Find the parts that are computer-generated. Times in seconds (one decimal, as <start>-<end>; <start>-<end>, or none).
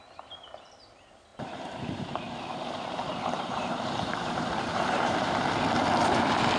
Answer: 1.3-5.3